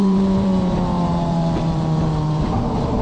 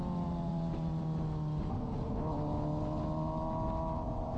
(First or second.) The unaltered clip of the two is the second